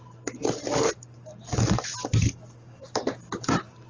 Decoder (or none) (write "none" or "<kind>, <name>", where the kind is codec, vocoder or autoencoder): none